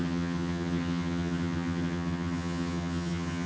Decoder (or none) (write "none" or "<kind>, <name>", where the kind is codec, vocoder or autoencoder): vocoder, HiFi-GAN